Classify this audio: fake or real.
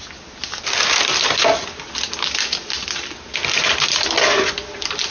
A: real